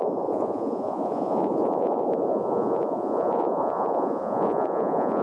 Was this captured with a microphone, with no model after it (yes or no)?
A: no